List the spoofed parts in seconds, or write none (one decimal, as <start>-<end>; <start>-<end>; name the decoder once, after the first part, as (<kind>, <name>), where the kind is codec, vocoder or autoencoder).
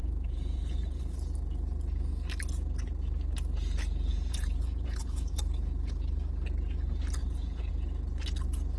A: 0.0-1.0 (vocoder, Vocos); 4.1-5.3; 7.2-7.7